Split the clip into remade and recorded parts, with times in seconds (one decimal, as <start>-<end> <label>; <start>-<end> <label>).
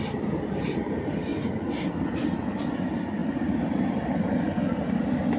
0.0-3.2 recorded; 3.2-4.3 remade; 4.3-5.4 recorded